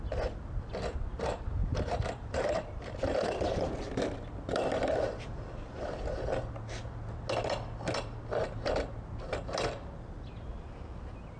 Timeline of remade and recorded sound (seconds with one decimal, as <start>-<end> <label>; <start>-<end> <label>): 0.0-1.6 recorded; 1.6-4.0 remade; 4.0-11.4 recorded